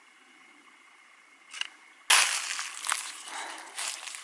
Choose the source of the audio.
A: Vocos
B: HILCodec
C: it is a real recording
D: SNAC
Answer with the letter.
C